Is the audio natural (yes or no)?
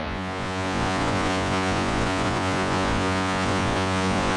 no